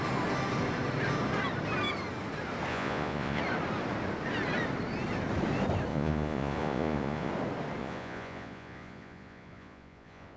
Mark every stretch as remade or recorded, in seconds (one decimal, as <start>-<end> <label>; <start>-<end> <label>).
0.0-2.7 recorded; 2.7-3.4 remade; 3.4-5.9 recorded; 5.9-7.3 remade; 7.3-7.8 recorded; 7.8-10.4 remade